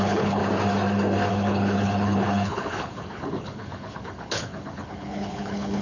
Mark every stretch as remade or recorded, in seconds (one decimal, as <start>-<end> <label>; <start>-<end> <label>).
0.0-0.4 remade; 0.4-1.3 recorded; 1.3-5.8 remade